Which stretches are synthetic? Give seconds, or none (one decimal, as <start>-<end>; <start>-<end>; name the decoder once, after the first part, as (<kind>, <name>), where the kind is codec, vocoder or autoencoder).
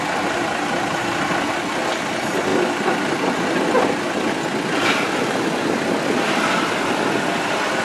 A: none